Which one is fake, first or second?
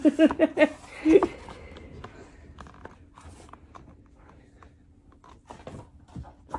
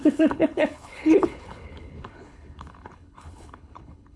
second